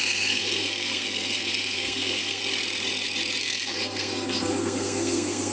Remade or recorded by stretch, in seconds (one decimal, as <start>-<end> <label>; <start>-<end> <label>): 0.0-2.4 remade; 2.4-3.4 recorded; 3.4-5.5 remade

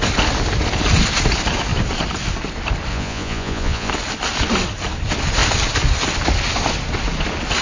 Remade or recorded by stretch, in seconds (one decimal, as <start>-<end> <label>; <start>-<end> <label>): 0.0-2.9 recorded; 2.9-3.9 remade; 3.9-7.6 recorded